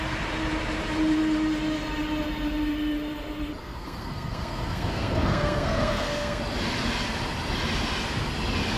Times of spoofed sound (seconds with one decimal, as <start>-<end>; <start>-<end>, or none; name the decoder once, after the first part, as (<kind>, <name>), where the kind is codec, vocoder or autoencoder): 3.6-6.4 (codec, SNAC)